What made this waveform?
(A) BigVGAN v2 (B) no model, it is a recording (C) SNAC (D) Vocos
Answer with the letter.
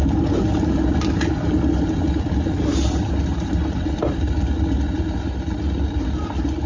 B